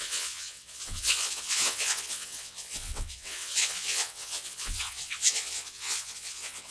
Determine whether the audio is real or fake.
fake